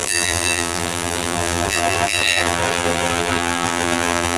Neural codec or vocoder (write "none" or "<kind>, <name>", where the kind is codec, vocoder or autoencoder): vocoder, BigVGAN v2